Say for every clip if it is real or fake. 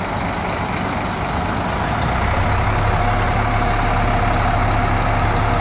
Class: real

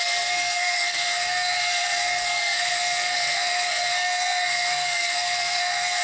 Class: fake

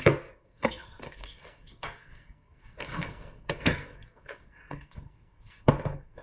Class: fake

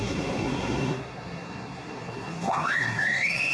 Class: fake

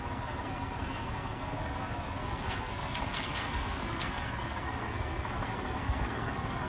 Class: fake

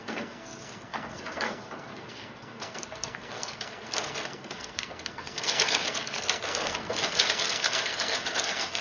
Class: fake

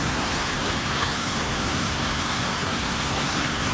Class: fake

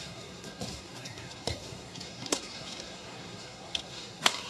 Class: fake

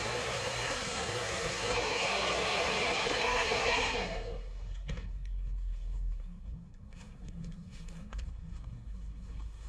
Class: fake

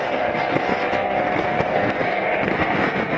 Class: fake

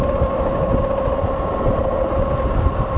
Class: real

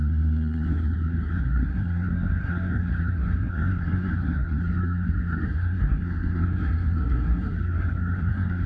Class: fake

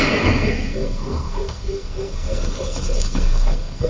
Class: fake